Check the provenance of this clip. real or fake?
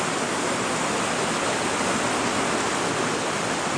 real